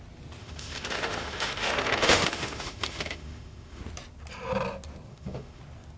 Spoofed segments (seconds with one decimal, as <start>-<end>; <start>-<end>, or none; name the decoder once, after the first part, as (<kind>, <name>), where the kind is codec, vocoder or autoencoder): 0.4-3.8 (autoencoder, DAC-VAE); 5.1-5.6